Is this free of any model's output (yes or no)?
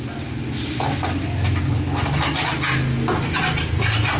yes